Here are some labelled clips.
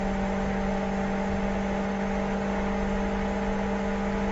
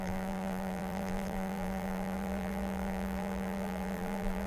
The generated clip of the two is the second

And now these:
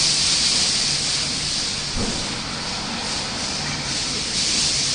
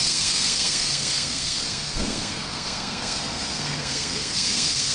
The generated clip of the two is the second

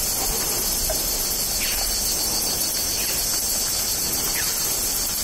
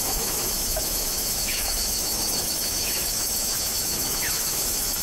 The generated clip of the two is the second